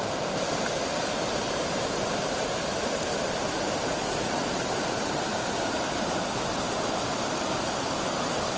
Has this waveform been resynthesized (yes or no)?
yes